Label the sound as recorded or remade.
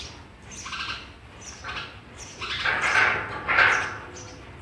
recorded